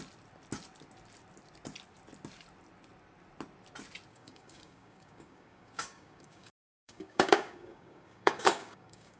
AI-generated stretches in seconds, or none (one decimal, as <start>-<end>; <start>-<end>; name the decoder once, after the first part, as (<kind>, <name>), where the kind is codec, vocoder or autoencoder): 4.1-9.2 (codec, DAC)